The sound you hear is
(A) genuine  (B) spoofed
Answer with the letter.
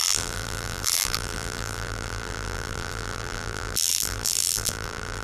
B